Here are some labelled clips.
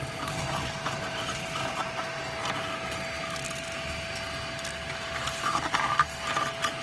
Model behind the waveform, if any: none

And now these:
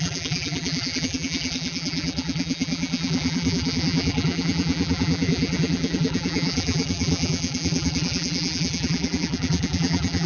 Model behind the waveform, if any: vocoder, BigVGAN v2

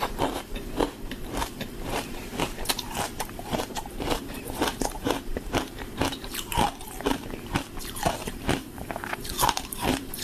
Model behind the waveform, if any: vocoder, BigVGAN v2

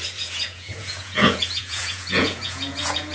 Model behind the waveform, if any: vocoder, Vocos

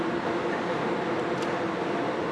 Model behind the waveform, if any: none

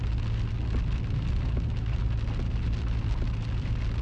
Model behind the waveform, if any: none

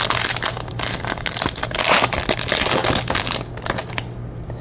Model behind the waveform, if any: none